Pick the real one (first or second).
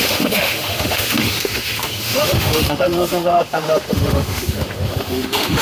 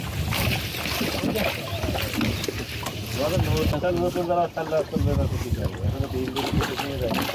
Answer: second